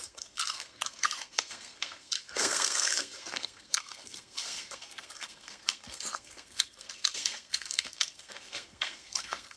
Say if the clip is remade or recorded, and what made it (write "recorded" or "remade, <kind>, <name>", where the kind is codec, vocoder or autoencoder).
remade, codec, SNAC